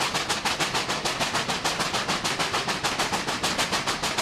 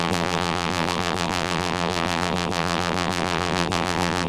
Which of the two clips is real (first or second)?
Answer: first